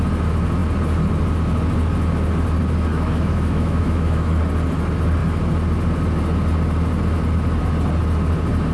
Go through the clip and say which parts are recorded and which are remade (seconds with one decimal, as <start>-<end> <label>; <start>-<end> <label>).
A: 0.0-2.9 recorded; 2.9-4.3 remade; 4.3-8.7 recorded